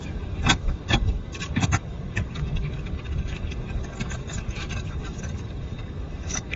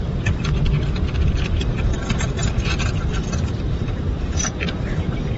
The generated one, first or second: first